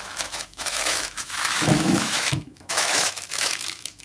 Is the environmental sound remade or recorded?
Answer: remade